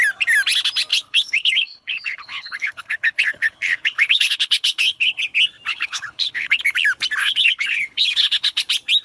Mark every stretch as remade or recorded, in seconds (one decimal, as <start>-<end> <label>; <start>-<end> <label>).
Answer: 0.0-0.9 recorded; 0.9-5.2 remade; 5.2-5.7 recorded; 5.7-6.6 remade; 6.6-7.2 recorded; 7.2-8.6 remade; 8.6-9.0 recorded